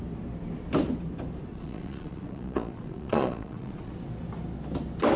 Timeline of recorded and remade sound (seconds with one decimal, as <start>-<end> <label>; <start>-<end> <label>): 0.0-1.5 recorded; 1.5-3.9 remade; 3.9-5.2 recorded